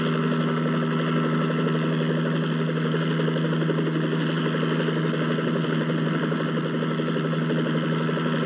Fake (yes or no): no